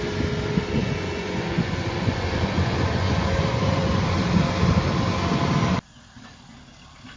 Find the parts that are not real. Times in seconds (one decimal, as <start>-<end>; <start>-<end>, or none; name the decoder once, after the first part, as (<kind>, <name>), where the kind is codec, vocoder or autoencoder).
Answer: 0.8-4.0 (vocoder, Vocos)